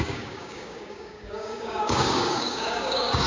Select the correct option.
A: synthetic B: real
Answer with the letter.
A